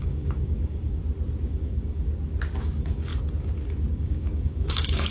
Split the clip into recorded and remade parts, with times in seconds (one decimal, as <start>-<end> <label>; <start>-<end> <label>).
0.0-1.0 remade; 1.0-1.5 recorded; 1.5-2.1 remade; 2.1-2.6 recorded; 2.6-3.1 remade; 3.1-3.9 recorded; 3.9-5.1 remade